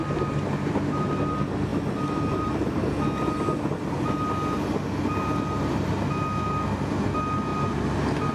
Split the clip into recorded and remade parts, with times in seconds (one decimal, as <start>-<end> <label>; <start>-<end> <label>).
0.0-8.3 recorded